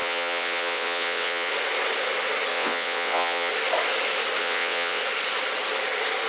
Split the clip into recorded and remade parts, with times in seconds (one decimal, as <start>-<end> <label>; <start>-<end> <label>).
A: 0.0-1.5 remade; 1.5-2.5 recorded; 2.5-3.5 remade; 3.5-4.4 recorded; 4.4-5.0 remade; 5.0-6.3 recorded